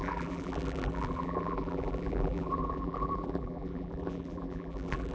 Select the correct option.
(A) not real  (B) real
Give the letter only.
A